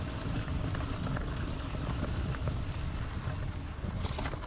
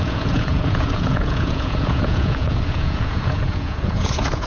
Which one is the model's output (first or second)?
second